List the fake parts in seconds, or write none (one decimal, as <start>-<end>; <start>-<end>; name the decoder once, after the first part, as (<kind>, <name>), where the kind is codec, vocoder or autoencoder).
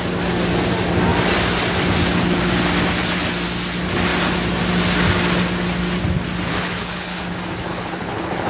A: 6.5-7.2 (codec, HILCodec); 7.7-8.5